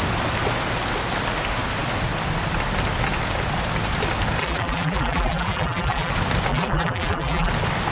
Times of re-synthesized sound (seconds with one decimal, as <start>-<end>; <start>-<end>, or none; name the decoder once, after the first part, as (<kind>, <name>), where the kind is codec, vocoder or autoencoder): 4.4-6.1 (vocoder, BigVGAN v2); 6.5-7.5